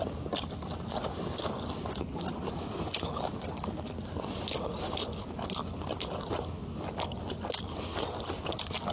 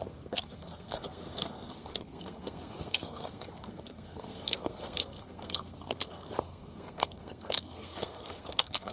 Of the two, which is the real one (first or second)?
first